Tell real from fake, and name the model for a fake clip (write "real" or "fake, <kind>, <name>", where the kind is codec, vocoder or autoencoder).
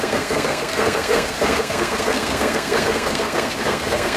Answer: fake, codec, SNAC